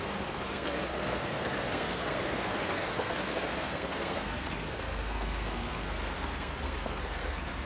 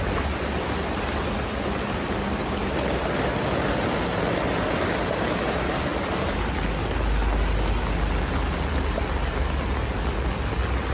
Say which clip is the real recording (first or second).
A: second